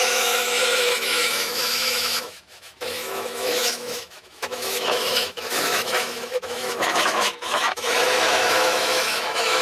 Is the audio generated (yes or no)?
yes